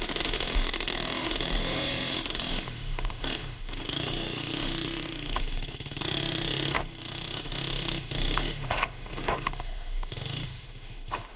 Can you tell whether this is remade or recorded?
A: remade